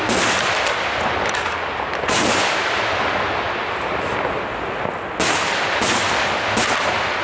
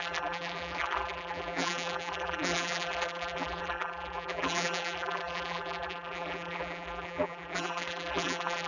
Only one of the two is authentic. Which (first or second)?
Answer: first